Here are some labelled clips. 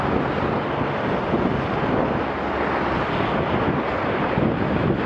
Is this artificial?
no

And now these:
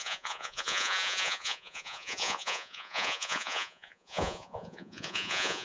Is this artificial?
yes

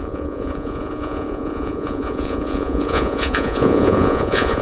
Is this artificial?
yes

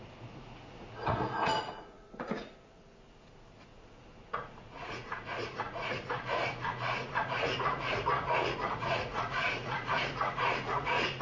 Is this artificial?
yes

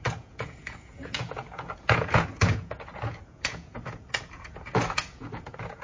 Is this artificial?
yes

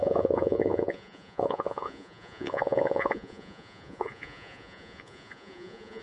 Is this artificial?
yes